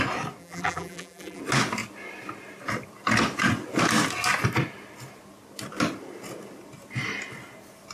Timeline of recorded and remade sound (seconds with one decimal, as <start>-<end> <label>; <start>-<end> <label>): 0.0-0.4 recorded; 0.4-1.4 remade; 1.4-7.9 recorded